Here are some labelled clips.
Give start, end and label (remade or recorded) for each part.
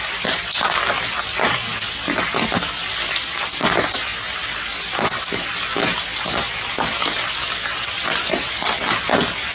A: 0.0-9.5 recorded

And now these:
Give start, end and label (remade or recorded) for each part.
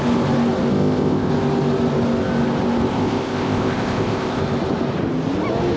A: 0.0-0.7 recorded; 0.7-1.3 remade; 1.3-2.9 recorded; 2.9-4.4 remade; 4.4-5.8 recorded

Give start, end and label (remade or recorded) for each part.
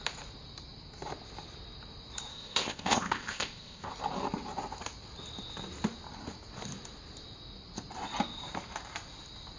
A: 0.0-2.3 recorded; 2.3-3.9 remade; 3.9-9.6 recorded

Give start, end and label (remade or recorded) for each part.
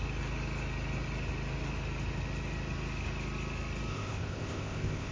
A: 0.0-3.9 recorded; 3.9-5.1 remade